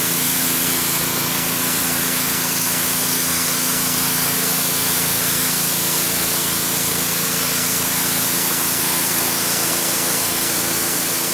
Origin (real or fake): fake